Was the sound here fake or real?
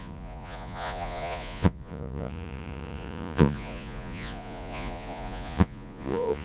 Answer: fake